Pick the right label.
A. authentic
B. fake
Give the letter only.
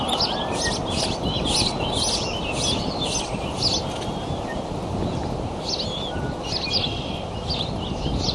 A